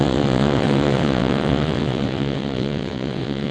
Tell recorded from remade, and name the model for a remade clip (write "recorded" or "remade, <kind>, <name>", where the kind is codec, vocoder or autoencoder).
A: remade, vocoder, WaveNeXt